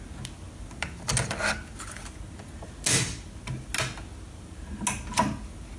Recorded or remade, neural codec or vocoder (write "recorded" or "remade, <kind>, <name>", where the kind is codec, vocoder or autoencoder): recorded